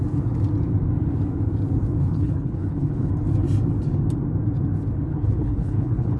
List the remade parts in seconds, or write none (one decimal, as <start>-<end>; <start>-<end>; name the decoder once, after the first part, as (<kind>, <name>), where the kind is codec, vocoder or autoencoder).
2.0-3.1 (codec, HILCodec); 5.1-6.2